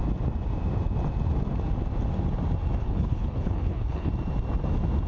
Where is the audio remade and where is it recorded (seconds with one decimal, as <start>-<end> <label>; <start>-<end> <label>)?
0.0-2.8 recorded; 2.8-4.1 remade; 4.1-5.1 recorded